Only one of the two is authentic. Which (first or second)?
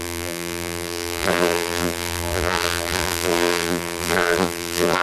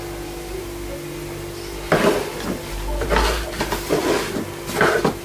second